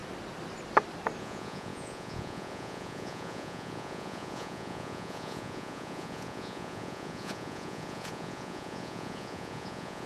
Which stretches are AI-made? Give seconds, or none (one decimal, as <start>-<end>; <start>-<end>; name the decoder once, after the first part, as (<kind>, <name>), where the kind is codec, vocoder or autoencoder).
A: 1.2-10.1 (vocoder, Vocos)